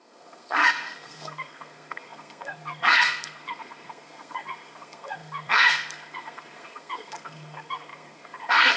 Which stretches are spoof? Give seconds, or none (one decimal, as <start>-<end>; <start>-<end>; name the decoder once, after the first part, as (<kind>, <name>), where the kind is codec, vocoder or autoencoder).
0.0-8.8 (codec, SNAC)